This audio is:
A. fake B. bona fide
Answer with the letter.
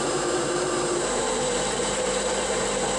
A